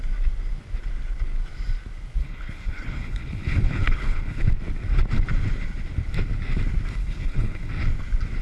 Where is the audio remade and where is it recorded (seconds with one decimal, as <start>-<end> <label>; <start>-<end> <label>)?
0.0-2.2 recorded; 2.2-4.5 remade; 4.5-6.9 recorded; 6.9-7.7 remade; 7.7-8.4 recorded